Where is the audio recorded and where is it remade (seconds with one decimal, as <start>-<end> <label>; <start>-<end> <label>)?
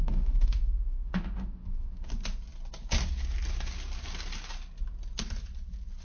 0.0-2.1 remade; 2.1-6.0 recorded